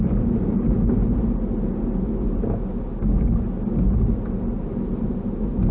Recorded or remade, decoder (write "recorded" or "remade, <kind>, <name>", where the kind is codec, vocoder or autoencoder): recorded